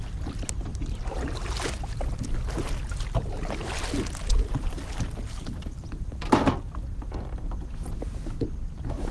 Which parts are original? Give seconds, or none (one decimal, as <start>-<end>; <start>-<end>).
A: 0.0-9.1